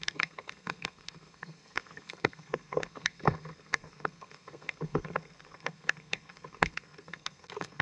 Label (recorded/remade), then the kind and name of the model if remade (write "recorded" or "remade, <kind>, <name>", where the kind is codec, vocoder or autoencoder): remade, codec, SNAC